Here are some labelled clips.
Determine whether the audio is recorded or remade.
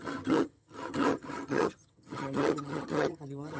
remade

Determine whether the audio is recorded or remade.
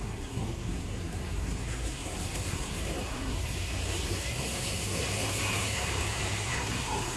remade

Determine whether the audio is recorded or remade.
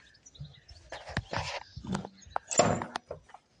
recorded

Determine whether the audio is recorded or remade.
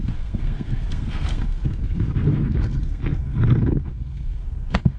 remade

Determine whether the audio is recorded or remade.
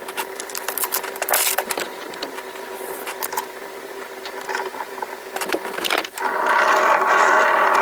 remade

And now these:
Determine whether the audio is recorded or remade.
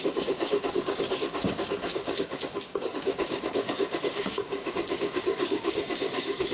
remade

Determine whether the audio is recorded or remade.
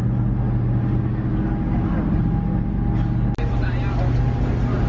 recorded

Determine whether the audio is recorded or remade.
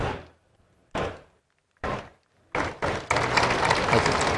recorded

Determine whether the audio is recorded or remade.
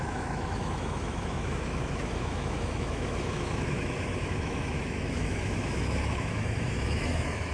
remade